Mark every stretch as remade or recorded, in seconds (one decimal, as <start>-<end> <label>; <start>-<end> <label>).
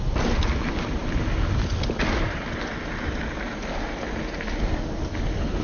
0.0-5.6 recorded